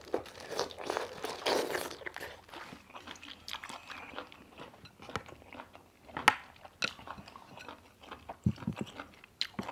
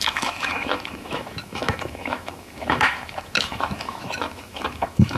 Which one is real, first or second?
first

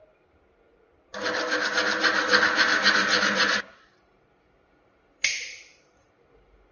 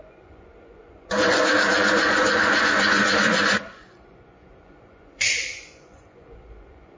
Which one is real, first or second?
first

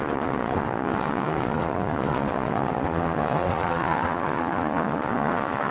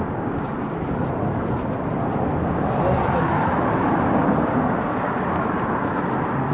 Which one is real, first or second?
second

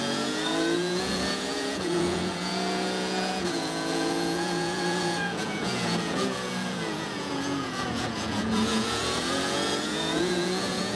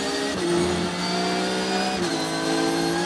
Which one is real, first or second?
second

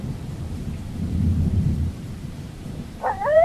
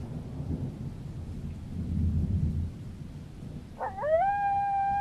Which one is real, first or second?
second